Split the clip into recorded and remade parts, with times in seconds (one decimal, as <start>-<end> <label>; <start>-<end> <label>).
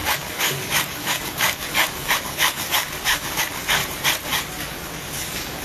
0.0-3.8 remade; 3.8-4.6 recorded; 4.6-5.6 remade